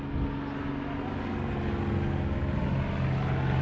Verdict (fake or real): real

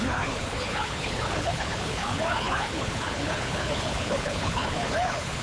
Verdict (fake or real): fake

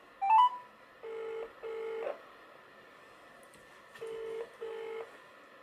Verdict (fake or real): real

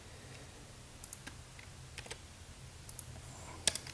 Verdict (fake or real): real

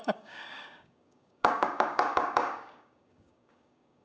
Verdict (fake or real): fake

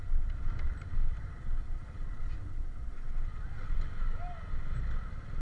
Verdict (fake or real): real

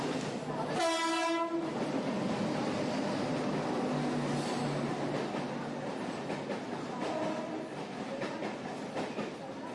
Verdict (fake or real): real